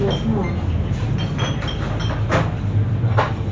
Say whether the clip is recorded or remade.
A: recorded